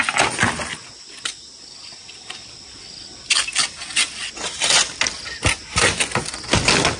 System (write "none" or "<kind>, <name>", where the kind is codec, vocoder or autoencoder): none